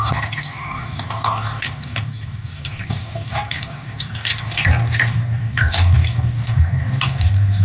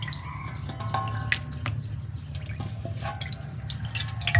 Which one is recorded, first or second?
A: second